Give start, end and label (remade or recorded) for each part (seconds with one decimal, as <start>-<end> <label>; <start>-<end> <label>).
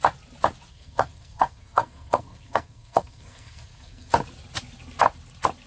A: 0.0-0.7 recorded; 0.7-4.1 remade; 4.1-5.7 recorded